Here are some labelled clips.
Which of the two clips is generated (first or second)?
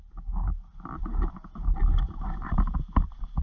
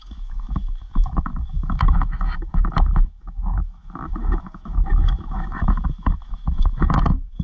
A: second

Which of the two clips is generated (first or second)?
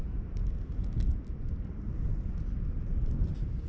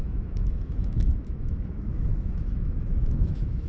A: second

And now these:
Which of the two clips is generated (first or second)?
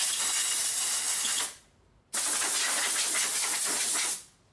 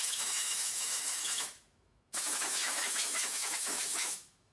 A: second